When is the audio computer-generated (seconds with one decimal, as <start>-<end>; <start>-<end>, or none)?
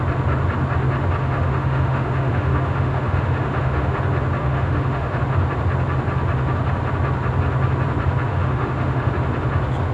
1.2-4.0; 4.4-5.2; 8.3-9.1